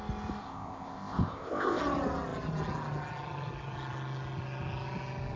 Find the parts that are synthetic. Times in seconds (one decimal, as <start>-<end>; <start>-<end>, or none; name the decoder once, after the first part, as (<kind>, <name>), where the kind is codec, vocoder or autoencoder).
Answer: 0.4-1.8 (codec, ZipCodec)